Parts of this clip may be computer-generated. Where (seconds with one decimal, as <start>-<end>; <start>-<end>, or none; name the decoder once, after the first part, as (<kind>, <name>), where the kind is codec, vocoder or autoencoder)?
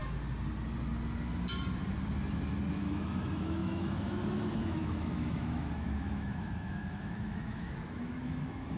2.9-8.8 (autoencoder, DAC-VAE)